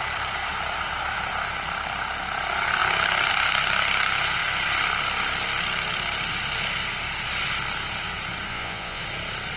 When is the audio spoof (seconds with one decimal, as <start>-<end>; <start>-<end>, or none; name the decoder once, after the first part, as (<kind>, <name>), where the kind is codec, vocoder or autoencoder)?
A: 8.5-9.0 (vocoder, Vocos)

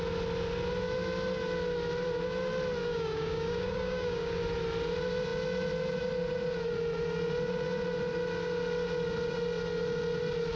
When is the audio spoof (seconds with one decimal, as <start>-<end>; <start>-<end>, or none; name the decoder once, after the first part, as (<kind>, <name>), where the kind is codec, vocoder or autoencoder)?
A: 2.8-4.4 (codec, DAC)

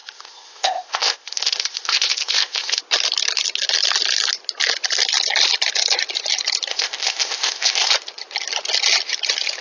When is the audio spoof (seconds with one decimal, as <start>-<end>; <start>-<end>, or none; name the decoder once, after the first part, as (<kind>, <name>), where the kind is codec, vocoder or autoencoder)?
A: 0.0-2.8 (codec, ZipCodec); 6.7-7.9

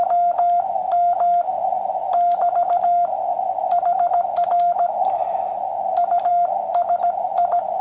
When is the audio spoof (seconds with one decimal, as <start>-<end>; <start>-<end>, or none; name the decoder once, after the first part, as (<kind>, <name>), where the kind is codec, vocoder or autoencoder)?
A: none

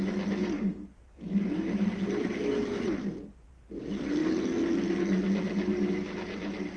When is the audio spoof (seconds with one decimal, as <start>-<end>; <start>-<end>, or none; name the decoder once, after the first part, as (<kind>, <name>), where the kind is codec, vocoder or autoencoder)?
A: none

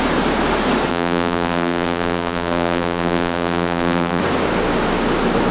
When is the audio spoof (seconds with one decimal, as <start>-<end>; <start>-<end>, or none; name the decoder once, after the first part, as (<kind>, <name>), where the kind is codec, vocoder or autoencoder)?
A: 0.9-4.2 (vocoder, BigVGAN v2)